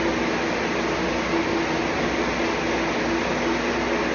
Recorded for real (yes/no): yes